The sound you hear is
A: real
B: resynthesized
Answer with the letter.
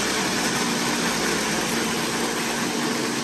A